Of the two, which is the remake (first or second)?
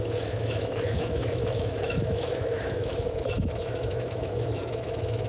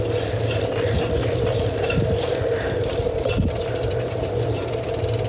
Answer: first